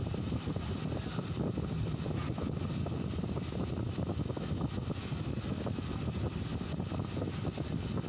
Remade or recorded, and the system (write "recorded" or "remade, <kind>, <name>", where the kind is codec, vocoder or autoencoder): recorded